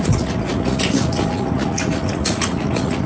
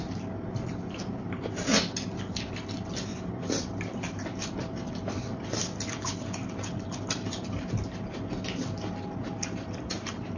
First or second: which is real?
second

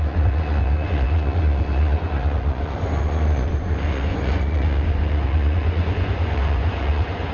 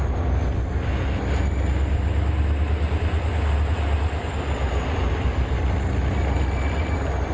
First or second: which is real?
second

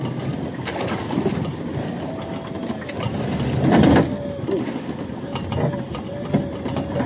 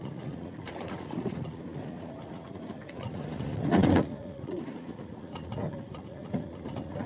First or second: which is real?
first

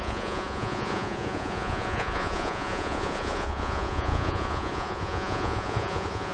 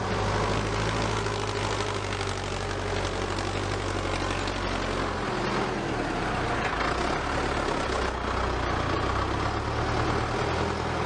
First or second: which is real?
second